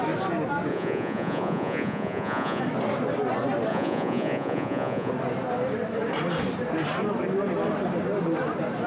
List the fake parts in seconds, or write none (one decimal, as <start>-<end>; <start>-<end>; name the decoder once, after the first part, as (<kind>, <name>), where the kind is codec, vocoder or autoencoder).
0.7-2.6 (vocoder, Vocos); 3.7-5.1